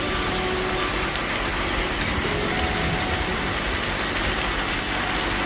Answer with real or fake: real